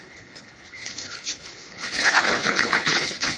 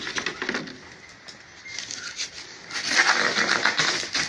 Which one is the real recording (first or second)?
second